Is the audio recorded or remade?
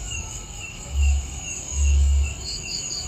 remade